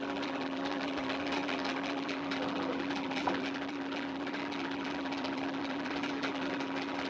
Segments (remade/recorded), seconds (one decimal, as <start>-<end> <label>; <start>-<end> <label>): 0.0-7.1 remade